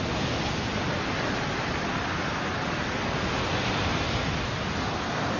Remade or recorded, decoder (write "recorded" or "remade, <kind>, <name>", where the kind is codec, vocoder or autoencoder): recorded